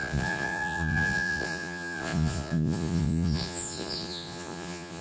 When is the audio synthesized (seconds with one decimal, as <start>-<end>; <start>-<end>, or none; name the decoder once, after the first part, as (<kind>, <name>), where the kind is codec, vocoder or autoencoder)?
0.0-5.0 (vocoder, Vocos)